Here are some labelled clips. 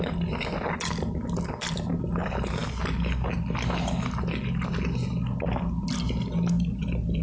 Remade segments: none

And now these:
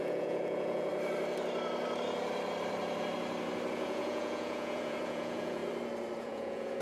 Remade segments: 0.0-0.9 (vocoder, Vocos); 3.7-5.6; 6.2-6.8

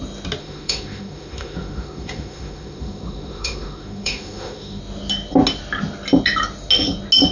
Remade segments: 0.4-4.8 (autoencoder, DAC-VAE)

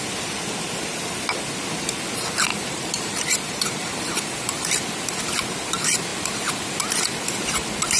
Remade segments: 2.5-4.7 (vocoder, BigVGAN v2)

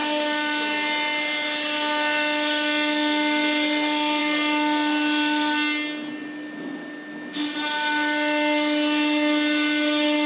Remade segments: none

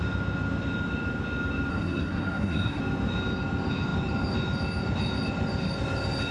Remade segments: 1.7-2.8 (codec, SNAC)